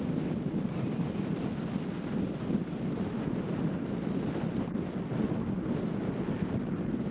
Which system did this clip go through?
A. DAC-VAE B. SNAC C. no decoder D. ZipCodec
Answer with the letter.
C